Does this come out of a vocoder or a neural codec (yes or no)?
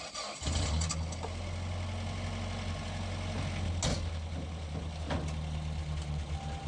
no